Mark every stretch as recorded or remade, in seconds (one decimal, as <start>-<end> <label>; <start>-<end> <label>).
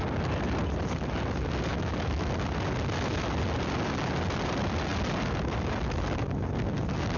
0.0-1.7 recorded; 1.7-2.3 remade; 2.3-7.2 recorded